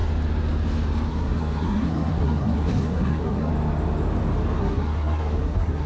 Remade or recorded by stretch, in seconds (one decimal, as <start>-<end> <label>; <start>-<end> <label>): 0.0-1.1 recorded; 1.1-3.5 remade; 3.5-4.6 recorded; 4.6-5.9 remade